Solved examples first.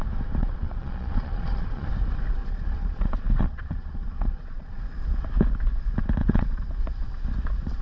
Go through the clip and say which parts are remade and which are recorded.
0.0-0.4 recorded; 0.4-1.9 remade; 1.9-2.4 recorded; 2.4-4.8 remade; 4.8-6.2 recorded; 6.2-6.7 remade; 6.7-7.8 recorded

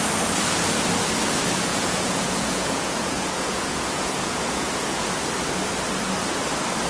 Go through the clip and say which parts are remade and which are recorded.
0.0-1.7 recorded; 1.7-5.3 remade; 5.3-6.9 recorded

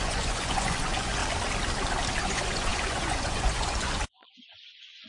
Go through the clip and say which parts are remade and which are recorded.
0.0-1.2 remade; 1.2-2.2 recorded; 2.2-5.1 remade

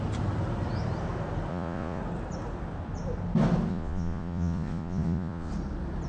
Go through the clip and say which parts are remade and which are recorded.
0.0-1.5 recorded; 1.5-2.0 remade; 2.0-3.7 recorded; 3.7-5.5 remade; 5.5-6.1 recorded

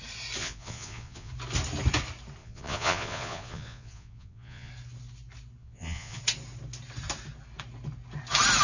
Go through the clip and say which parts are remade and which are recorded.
0.0-0.4 recorded; 0.4-1.3 remade; 1.3-2.4 recorded; 2.4-4.7 remade; 4.7-5.6 recorded; 5.6-6.2 remade; 6.2-8.6 recorded